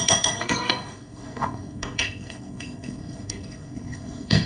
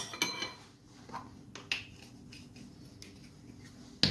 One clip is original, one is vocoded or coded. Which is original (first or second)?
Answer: second